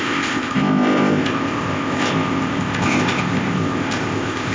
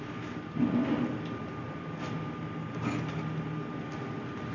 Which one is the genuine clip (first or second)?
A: second